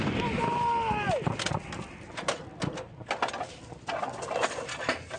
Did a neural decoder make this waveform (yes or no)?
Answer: no